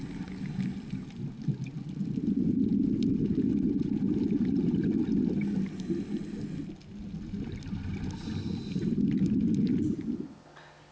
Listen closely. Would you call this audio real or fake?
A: real